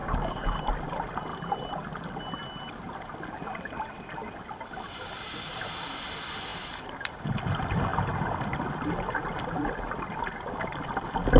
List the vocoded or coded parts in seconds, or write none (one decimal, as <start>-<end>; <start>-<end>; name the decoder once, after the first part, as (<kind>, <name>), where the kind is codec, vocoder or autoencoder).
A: 0.0-0.6 (codec, DAC)